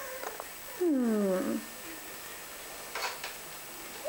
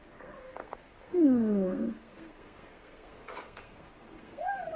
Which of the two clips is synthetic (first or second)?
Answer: second